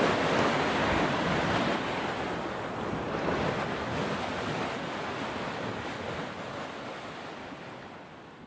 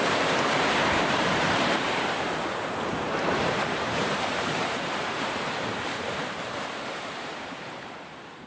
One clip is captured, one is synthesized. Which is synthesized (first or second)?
second